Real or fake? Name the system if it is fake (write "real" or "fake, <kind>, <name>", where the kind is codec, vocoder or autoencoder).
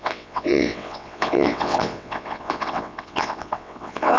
fake, vocoder, WaveNeXt